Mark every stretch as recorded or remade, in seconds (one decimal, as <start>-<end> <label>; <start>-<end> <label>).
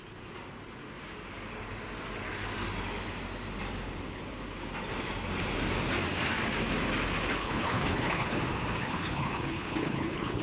0.0-7.4 recorded; 7.4-8.4 remade; 8.4-8.8 recorded; 8.8-10.4 remade